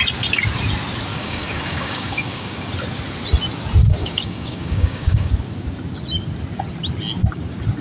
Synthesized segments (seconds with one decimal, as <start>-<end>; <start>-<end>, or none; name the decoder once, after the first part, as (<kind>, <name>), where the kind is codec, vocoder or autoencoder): 1.1-2.7 (codec, DAC); 4.0-5.3